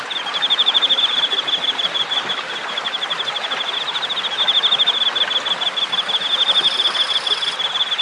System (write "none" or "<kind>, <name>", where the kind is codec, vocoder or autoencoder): none